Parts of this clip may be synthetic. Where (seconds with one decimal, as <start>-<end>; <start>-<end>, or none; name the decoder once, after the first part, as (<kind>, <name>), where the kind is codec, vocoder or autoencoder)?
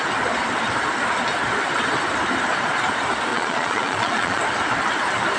3.3-4.4 (vocoder, Vocos)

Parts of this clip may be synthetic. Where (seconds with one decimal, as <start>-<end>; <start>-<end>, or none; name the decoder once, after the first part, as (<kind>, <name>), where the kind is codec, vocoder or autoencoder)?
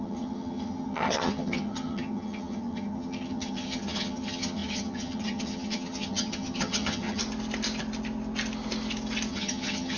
0.0-7.2 (vocoder, HiFi-GAN); 9.3-10.0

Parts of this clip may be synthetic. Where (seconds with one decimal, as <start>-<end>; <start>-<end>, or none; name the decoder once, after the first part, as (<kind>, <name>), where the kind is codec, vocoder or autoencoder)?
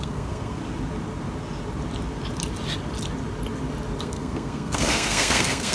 0.0-0.6 (codec, SNAC); 4.0-5.7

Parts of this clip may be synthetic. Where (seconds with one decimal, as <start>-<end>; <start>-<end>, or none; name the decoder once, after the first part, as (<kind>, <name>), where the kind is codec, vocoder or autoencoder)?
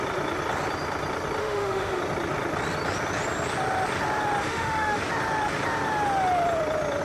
1.4-2.0 (autoencoder, DAC-VAE); 4.4-5.0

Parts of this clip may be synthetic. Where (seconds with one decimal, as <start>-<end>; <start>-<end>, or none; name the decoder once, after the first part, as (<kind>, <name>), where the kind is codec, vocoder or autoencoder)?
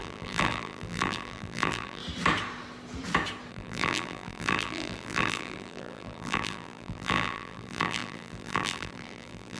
0.0-2.0 (vocoder, BigVGAN v2); 3.5-9.6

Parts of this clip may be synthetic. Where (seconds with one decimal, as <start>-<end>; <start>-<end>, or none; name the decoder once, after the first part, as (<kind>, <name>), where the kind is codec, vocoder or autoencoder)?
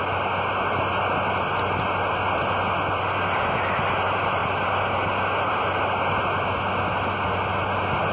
none